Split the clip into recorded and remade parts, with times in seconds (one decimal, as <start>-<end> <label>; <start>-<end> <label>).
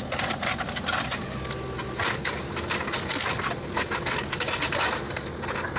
0.0-5.8 recorded